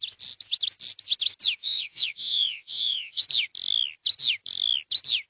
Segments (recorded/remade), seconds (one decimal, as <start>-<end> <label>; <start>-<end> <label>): 0.0-1.6 recorded; 1.6-3.2 remade; 3.2-5.3 recorded